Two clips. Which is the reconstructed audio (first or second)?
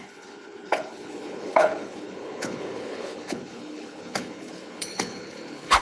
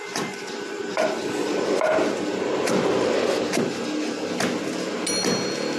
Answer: first